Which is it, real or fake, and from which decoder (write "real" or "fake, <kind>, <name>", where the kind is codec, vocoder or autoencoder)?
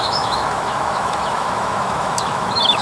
fake, autoencoder, DAC-VAE